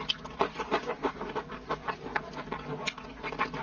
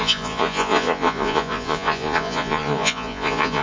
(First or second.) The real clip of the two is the first